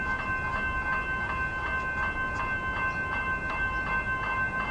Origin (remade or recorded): recorded